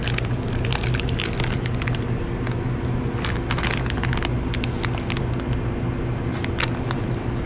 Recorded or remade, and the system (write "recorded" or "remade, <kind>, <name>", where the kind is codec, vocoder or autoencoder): recorded